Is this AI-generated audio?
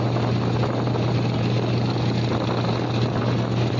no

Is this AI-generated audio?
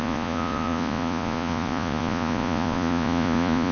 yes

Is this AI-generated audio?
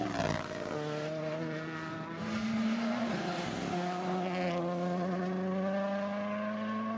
no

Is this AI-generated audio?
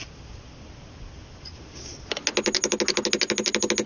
no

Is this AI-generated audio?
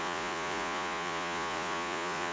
yes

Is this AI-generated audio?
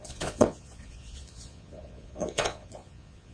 yes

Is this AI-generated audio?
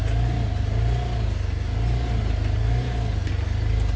no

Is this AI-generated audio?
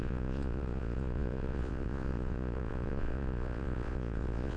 yes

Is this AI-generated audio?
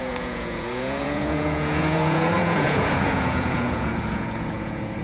yes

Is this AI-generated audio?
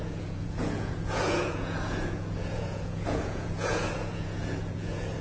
yes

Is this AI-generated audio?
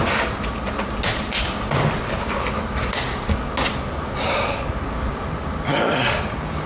no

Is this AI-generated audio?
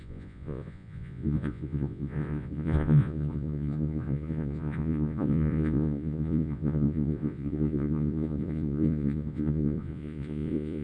yes